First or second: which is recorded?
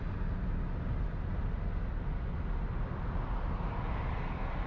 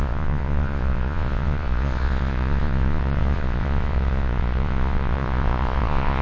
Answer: first